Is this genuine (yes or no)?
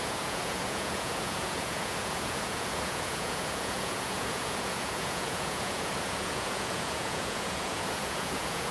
no